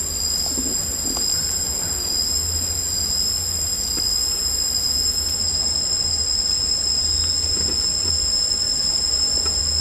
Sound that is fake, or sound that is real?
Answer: real